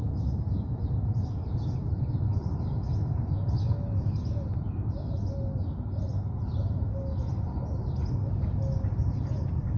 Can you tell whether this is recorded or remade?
recorded